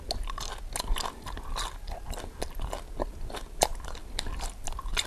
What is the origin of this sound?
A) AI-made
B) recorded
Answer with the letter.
B